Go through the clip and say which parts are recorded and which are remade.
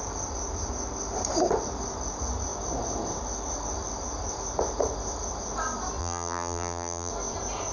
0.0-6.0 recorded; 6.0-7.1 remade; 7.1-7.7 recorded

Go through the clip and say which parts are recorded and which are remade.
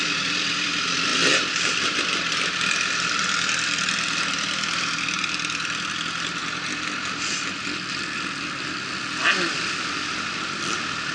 0.0-6.4 remade; 6.4-9.6 recorded; 9.6-11.1 remade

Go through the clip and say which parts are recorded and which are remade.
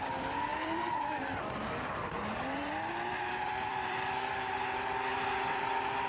0.0-0.5 recorded; 0.5-1.5 remade; 1.5-2.6 recorded; 2.6-4.1 remade; 4.1-5.1 recorded; 5.1-5.6 remade; 5.6-6.1 recorded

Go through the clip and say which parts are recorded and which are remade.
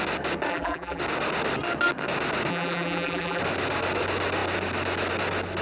0.0-0.5 recorded; 0.5-1.0 remade; 1.0-2.5 recorded; 2.5-3.4 remade; 3.4-5.6 recorded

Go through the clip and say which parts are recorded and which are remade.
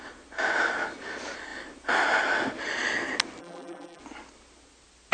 0.0-3.4 recorded; 3.4-4.0 remade; 4.0-5.1 recorded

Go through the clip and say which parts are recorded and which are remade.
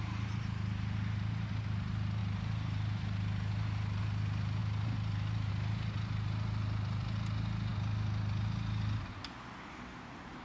0.0-2.2 recorded; 2.2-4.0 remade; 4.0-4.6 recorded; 4.6-5.5 remade; 5.5-10.4 recorded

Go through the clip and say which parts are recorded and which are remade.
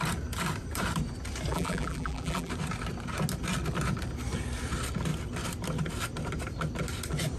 0.0-1.5 recorded; 1.5-2.5 remade; 2.5-7.4 recorded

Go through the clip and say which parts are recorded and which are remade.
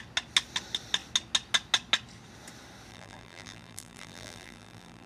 0.0-2.9 recorded; 2.9-5.1 remade